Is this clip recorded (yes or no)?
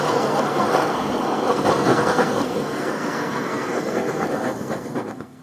no